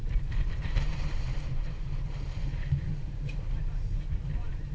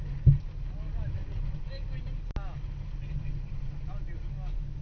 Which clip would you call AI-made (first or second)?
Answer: first